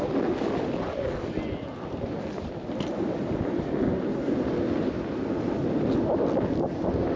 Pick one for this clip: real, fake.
real